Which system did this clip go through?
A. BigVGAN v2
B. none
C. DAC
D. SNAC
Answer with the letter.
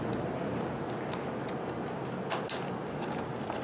B